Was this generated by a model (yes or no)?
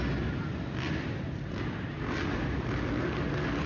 no